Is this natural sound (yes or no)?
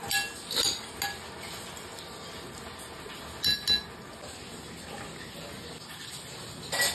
yes